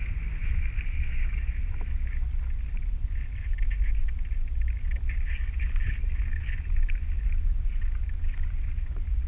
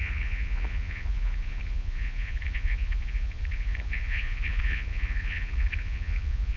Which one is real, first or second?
first